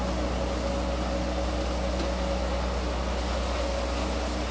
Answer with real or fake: real